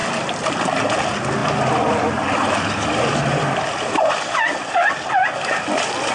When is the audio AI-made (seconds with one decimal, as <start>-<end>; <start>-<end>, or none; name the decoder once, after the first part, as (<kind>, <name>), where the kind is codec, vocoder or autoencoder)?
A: none